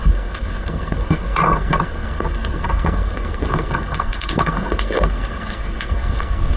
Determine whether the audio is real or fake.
fake